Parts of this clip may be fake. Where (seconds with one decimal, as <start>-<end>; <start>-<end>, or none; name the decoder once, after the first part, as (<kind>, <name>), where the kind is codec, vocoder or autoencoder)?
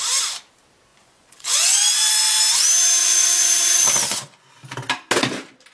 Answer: 0.9-2.4 (vocoder, Vocos); 3.0-4.5